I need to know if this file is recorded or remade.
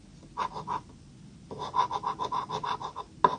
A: recorded